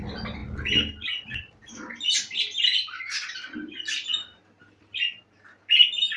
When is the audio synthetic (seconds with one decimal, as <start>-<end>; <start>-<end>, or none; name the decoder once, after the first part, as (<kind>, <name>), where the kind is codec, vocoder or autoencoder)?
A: none